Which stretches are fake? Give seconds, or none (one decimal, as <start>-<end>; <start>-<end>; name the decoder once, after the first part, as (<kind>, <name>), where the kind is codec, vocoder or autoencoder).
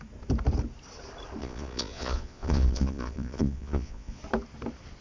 1.4-4.2 (vocoder, Vocos)